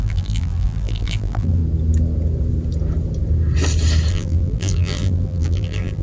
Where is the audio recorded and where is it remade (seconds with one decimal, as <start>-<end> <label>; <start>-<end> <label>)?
0.0-1.6 remade; 1.6-4.1 recorded; 4.1-6.0 remade